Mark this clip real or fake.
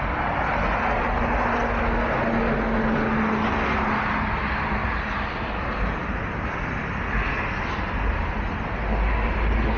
real